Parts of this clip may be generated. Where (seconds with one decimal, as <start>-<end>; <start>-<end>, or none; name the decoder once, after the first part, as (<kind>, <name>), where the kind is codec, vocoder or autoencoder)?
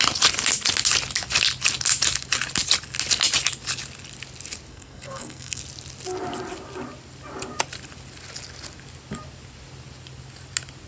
4.7-5.6 (codec, SNAC)